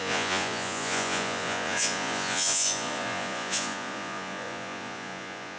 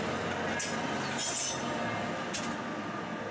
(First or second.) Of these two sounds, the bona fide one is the second